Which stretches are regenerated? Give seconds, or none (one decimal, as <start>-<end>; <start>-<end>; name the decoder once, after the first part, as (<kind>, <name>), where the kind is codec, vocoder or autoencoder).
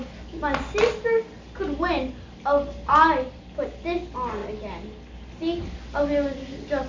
none